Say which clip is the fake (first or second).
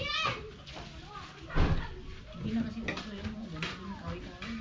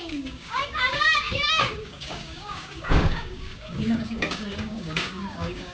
second